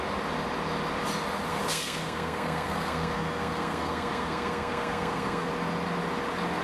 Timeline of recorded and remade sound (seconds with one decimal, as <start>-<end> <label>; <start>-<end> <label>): 0.0-1.5 recorded; 1.5-5.5 remade; 5.5-6.6 recorded